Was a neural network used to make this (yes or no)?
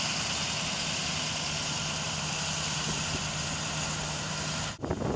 no